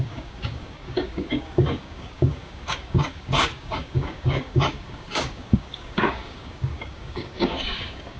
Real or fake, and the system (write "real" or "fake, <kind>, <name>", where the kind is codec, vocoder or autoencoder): fake, codec, DAC